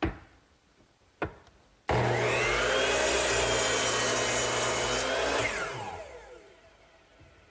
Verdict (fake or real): real